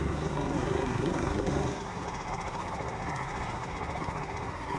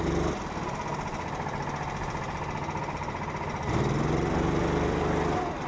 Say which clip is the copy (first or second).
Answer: first